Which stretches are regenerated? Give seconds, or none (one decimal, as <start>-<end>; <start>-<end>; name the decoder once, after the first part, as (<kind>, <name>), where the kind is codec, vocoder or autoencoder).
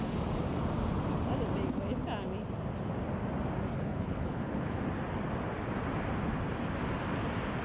3.7-4.8 (codec, HILCodec)